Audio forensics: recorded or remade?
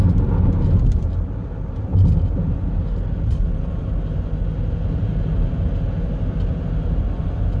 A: recorded